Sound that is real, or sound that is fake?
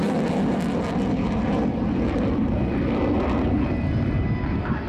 real